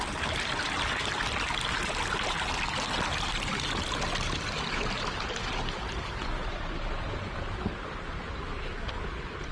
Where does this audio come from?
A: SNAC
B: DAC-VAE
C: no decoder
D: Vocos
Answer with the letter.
C